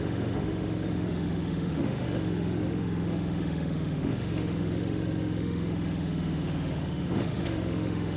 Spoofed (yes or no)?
yes